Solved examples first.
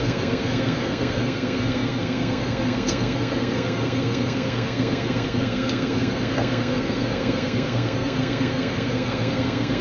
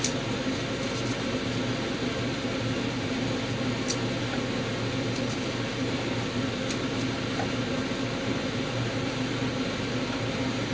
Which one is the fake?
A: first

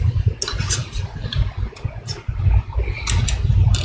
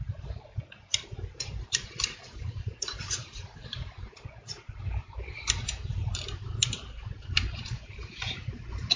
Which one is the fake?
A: second